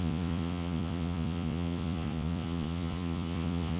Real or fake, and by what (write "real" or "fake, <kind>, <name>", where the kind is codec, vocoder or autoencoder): fake, vocoder, Vocos